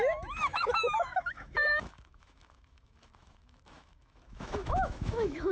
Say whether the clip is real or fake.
fake